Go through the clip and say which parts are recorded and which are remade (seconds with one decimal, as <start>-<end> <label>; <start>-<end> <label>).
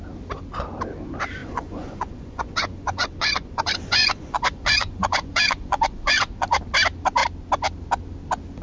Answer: 0.0-1.4 recorded; 1.4-6.6 remade; 6.6-8.6 recorded